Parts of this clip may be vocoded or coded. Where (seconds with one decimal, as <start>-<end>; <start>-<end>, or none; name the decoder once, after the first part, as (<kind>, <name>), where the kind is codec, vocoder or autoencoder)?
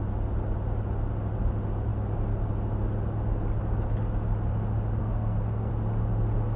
5.0-5.7 (codec, SNAC)